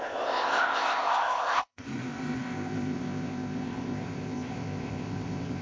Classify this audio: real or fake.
fake